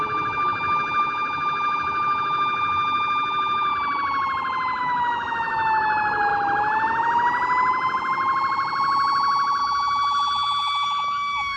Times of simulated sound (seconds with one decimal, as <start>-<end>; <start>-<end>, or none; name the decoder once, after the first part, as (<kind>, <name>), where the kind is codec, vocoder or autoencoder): 0.0-3.7 (autoencoder, DAC-VAE); 4.8-6.3; 9.6-11.6